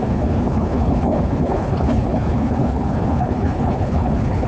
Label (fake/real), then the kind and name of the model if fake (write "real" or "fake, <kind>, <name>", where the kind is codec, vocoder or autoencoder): fake, codec, HILCodec